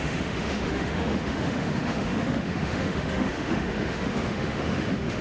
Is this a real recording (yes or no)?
no